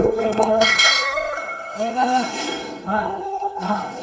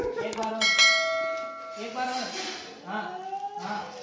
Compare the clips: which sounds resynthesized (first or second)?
first